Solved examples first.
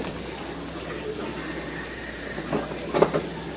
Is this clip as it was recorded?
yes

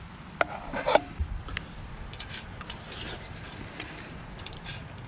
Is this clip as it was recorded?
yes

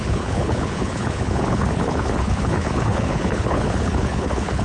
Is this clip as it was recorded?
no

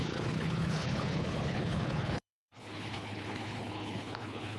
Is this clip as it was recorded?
no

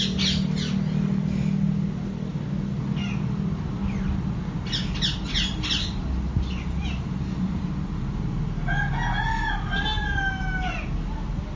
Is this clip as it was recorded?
yes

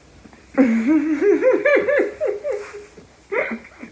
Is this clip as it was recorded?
yes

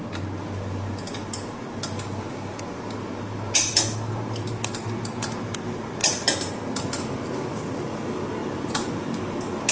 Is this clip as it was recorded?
yes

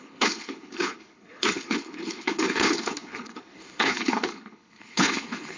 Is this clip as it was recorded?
no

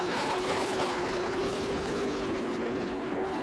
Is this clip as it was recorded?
no